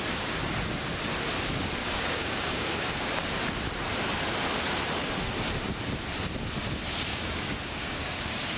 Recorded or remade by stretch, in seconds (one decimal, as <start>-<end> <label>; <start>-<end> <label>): 0.0-1.8 recorded; 1.8-3.2 remade; 3.2-7.1 recorded; 7.1-8.6 remade